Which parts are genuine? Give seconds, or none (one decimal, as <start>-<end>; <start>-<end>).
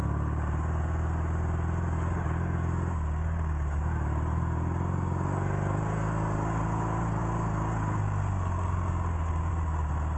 0.0-10.2